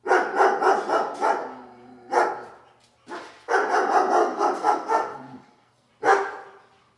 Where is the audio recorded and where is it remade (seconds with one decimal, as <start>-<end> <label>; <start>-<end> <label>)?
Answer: 0.0-4.2 recorded; 4.2-5.9 remade; 5.9-7.0 recorded